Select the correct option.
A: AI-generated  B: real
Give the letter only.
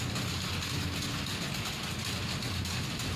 B